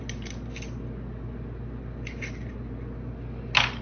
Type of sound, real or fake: real